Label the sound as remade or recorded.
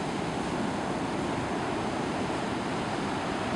recorded